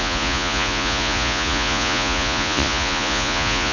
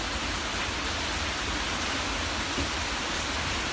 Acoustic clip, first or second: second